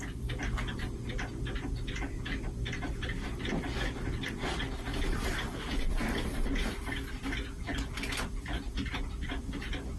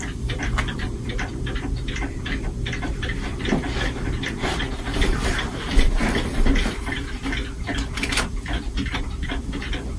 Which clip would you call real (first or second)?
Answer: first